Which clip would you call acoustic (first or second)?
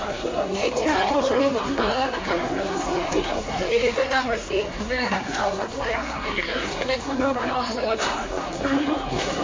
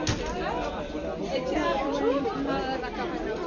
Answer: second